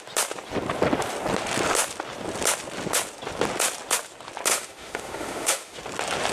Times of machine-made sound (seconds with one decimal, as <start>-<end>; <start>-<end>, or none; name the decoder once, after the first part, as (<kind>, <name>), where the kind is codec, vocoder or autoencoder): 4.5-5.8 (autoencoder, DAC-VAE)